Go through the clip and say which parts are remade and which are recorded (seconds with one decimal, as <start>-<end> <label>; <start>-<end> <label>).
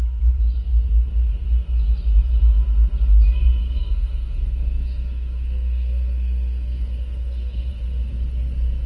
0.0-3.6 recorded; 3.6-7.7 remade; 7.7-8.9 recorded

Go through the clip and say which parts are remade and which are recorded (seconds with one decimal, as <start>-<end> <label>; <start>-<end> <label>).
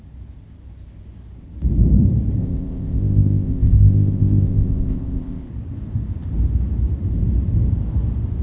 0.0-2.4 recorded; 2.4-5.5 remade; 5.5-8.4 recorded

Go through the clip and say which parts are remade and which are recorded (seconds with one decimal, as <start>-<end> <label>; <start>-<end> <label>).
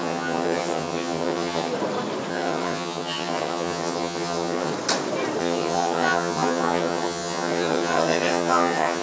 0.0-1.7 remade; 1.7-2.3 recorded; 2.3-4.7 remade; 4.7-5.4 recorded; 5.4-9.0 remade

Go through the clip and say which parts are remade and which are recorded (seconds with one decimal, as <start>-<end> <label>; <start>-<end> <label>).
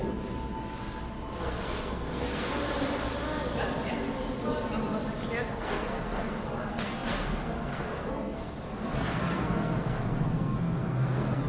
0.0-1.4 recorded; 1.4-2.6 remade; 2.6-5.5 recorded; 5.5-11.5 remade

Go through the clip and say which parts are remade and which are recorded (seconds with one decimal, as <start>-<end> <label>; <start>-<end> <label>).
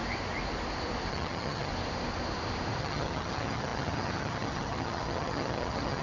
0.0-1.1 recorded; 1.1-1.7 remade; 1.7-2.8 recorded; 2.8-6.0 remade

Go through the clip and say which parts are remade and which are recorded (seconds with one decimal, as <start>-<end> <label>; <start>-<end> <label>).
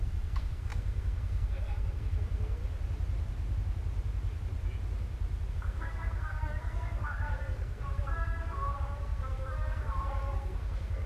0.0-2.6 remade; 2.6-5.5 recorded; 5.5-11.1 remade